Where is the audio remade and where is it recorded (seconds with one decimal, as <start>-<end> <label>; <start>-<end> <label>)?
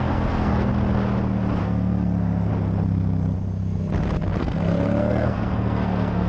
0.0-0.7 remade; 0.7-1.6 recorded; 1.6-2.5 remade; 2.5-4.4 recorded; 4.4-6.3 remade